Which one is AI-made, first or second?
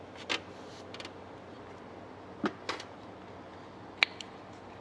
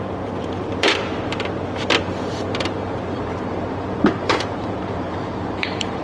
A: second